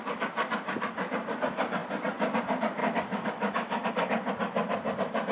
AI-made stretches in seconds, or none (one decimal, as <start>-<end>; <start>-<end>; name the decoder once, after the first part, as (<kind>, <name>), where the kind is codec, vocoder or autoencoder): 2.8-3.9 (autoencoder, DAC-VAE)